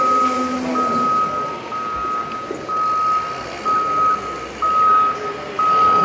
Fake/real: real